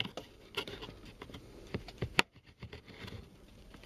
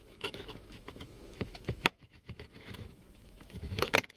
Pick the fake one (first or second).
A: second